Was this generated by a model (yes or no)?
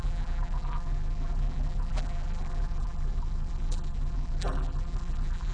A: yes